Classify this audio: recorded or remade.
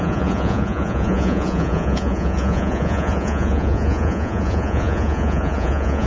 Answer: remade